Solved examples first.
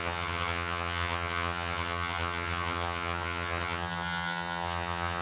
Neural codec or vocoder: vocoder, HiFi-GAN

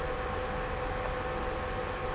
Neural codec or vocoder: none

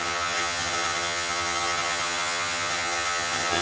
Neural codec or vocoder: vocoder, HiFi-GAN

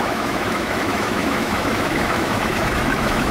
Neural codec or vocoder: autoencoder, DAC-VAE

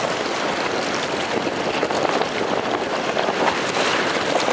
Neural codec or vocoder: none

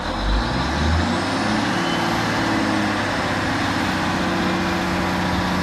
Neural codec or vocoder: none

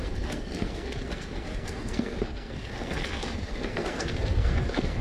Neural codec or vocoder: codec, SNAC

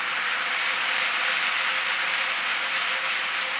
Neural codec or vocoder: none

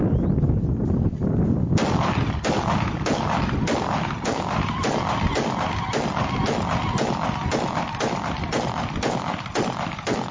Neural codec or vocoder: none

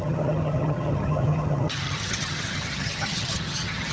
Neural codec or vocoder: vocoder, HiFi-GAN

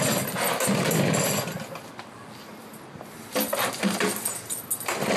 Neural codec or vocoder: none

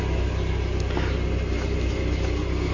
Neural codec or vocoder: none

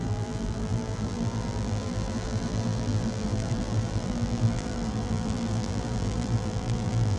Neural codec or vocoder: vocoder, BigVGAN v2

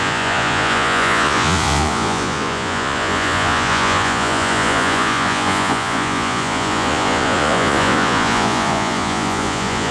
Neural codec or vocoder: vocoder, Vocos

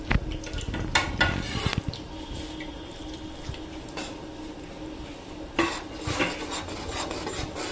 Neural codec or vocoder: none